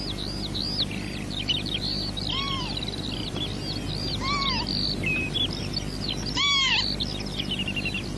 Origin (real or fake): real